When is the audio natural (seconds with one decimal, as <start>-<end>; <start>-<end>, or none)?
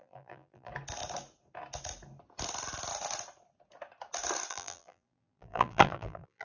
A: 0.7-4.5